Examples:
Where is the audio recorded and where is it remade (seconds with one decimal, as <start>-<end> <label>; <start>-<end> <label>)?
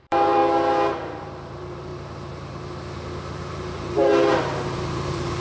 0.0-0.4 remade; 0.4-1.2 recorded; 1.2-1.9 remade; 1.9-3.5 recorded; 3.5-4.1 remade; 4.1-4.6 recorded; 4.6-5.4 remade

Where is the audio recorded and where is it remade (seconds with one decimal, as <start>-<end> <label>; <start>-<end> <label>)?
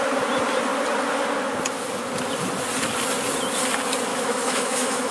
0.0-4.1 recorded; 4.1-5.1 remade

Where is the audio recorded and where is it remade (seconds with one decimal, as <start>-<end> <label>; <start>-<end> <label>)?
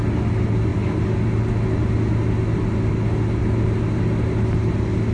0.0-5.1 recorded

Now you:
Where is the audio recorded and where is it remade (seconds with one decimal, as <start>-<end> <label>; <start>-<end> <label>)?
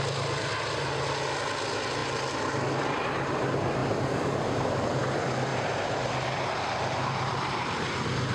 0.0-2.0 recorded; 2.0-2.6 remade; 2.6-3.8 recorded; 3.8-5.0 remade; 5.0-5.5 recorded; 5.5-7.7 remade; 7.7-8.3 recorded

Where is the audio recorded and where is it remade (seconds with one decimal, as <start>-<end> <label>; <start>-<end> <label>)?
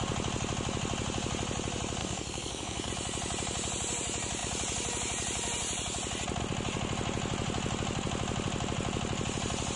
0.0-2.0 recorded; 2.0-2.9 remade; 2.9-9.8 recorded